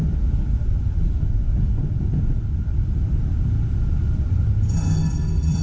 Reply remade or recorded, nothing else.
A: remade